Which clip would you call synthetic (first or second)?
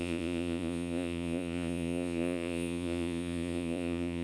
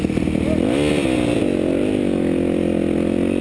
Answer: first